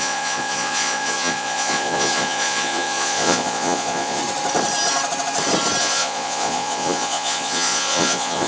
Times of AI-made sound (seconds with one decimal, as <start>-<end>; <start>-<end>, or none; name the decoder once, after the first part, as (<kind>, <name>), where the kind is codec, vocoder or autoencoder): 0.0-4.2 (vocoder, Vocos); 5.8-8.5